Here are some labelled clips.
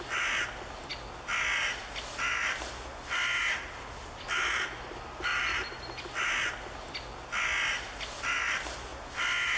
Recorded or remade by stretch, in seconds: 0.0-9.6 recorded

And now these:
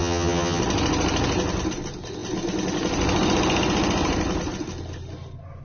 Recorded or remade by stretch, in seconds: 0.0-0.6 remade; 0.6-5.6 recorded

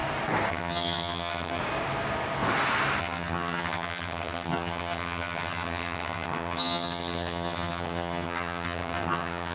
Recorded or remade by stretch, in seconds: 0.0-0.5 recorded; 0.5-1.6 remade; 1.6-3.0 recorded; 3.0-9.5 remade